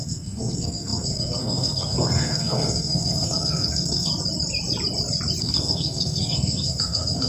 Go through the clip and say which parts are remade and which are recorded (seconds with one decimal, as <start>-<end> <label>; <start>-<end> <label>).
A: 0.0-4.1 remade; 4.1-5.4 recorded; 5.4-7.3 remade